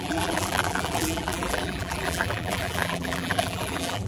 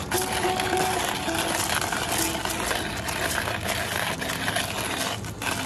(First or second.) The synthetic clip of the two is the first